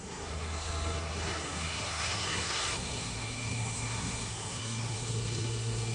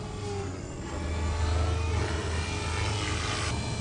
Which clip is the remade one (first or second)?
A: first